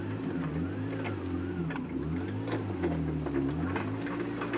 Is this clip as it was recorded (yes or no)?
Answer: yes